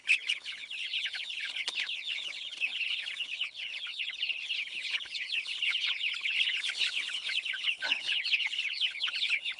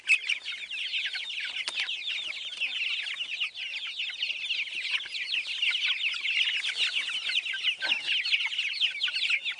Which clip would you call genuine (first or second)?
second